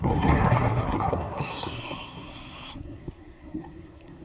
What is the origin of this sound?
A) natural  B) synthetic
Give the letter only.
B